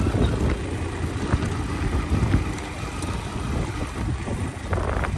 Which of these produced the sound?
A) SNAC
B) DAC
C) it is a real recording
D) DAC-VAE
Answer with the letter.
C